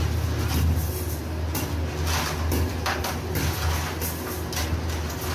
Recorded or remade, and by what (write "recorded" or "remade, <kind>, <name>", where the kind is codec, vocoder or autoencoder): recorded